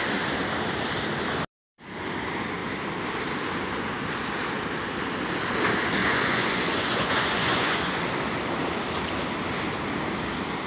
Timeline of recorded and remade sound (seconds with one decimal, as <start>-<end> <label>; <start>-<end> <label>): 0.0-6.0 recorded; 6.0-8.0 remade; 8.0-10.7 recorded